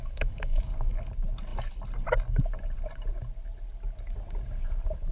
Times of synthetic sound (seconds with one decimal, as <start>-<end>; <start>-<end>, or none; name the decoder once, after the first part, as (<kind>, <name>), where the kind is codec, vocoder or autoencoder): 0.0-0.6 (autoencoder, DAC-VAE)